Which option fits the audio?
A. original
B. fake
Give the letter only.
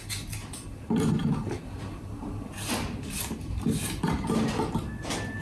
A